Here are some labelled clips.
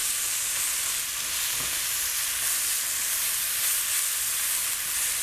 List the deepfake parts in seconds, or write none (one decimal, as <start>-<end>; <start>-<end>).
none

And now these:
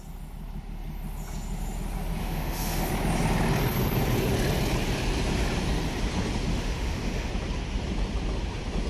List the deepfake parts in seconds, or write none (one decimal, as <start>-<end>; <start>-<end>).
2.2-2.9; 6.5-7.3

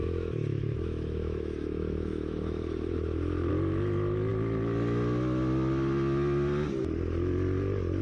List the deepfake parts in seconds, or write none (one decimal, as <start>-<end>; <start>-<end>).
0.0-3.5

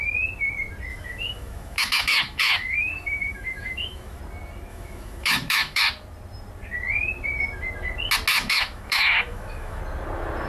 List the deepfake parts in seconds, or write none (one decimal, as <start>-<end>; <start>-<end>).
0.9-4.2; 4.7-5.8; 8.3-9.8

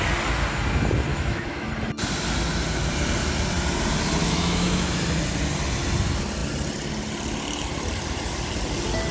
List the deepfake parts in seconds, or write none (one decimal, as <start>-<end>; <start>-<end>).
1.1-1.7; 4.2-4.9